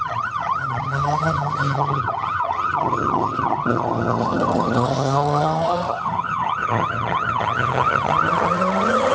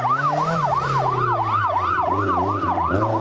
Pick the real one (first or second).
second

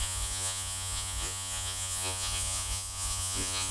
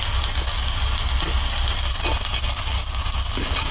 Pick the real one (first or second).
second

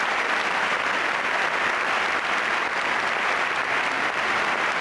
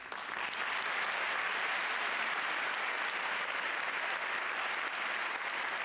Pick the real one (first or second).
second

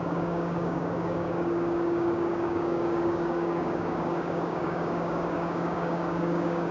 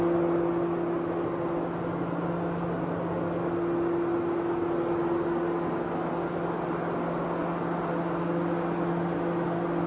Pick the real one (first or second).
second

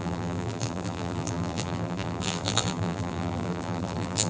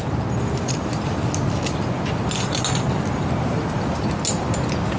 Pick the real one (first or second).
second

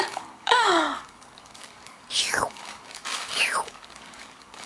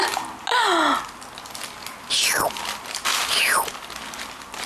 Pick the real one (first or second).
second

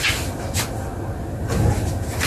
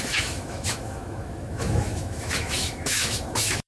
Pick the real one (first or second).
first